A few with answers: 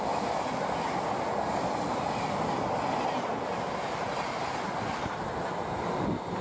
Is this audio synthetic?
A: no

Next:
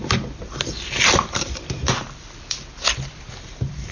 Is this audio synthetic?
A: yes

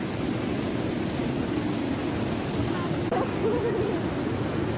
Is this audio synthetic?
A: no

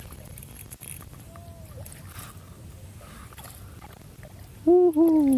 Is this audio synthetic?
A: no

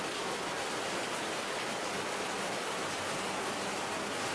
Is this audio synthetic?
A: no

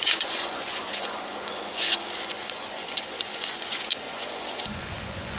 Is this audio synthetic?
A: yes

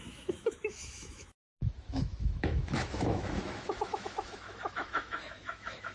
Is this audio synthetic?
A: yes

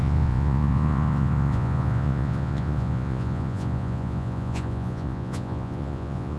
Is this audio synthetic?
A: yes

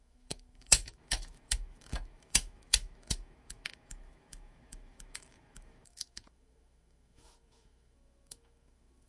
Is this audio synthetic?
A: yes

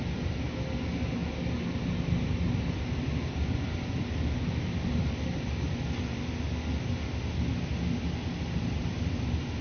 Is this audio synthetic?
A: no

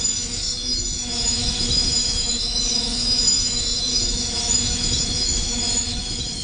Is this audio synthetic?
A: yes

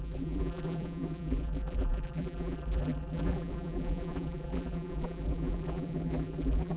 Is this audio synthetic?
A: yes